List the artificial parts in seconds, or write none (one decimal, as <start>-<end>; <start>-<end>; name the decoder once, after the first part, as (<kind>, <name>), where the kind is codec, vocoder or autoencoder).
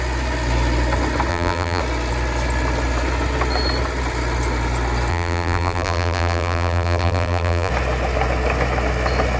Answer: 1.3-1.8 (vocoder, BigVGAN v2); 5.1-7.7